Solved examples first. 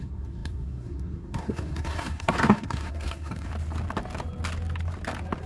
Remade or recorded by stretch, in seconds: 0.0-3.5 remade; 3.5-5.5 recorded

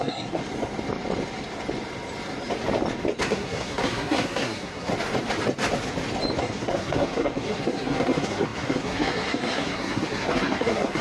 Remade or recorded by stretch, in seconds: 0.0-0.4 remade; 0.4-3.2 recorded; 3.2-4.9 remade; 4.9-6.4 recorded; 6.4-11.0 remade

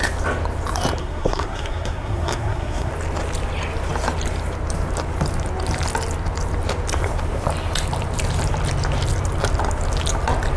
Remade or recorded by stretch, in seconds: 0.0-1.0 recorded; 1.0-2.9 remade; 2.9-10.6 recorded

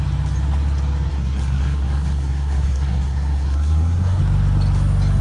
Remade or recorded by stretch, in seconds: 0.0-1.1 recorded; 1.1-4.2 remade; 4.2-5.2 recorded

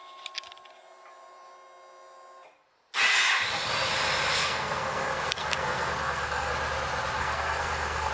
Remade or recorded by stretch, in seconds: 0.0-4.4 recorded; 4.4-6.5 remade; 6.5-7.2 recorded; 7.2-8.1 remade